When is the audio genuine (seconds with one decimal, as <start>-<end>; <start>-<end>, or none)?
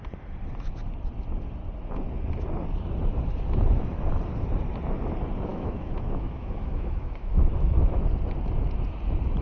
0.0-5.5; 8.0-9.4